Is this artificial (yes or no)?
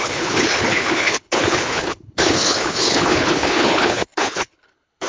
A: yes